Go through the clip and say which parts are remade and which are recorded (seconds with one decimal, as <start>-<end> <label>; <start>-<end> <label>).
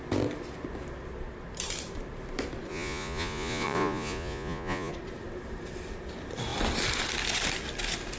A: 0.0-2.7 recorded; 2.7-4.9 remade; 4.9-8.2 recorded